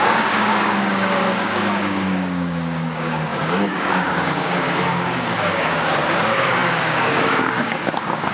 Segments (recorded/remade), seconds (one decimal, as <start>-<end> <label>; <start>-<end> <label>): 0.0-8.3 remade